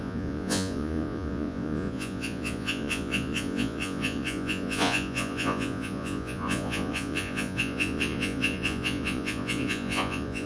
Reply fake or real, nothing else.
fake